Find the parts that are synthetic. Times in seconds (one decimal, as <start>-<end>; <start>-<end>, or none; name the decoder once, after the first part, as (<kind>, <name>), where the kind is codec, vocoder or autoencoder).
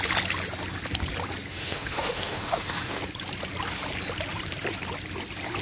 1.5-3.0 (autoencoder, DAC-VAE)